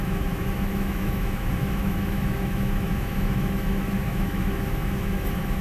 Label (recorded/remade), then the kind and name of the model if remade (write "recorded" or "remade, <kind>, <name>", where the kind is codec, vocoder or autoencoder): remade, autoencoder, DAC-VAE